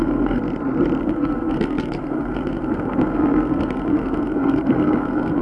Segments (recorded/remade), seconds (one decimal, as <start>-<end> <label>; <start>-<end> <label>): 0.0-0.4 remade; 0.4-1.0 recorded; 1.0-5.4 remade